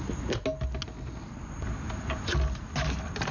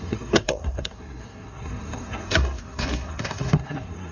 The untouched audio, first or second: first